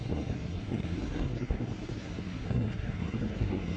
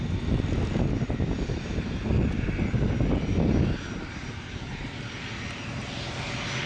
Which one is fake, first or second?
first